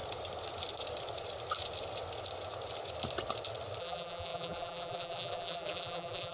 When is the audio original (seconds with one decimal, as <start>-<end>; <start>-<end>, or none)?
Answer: 0.0-3.8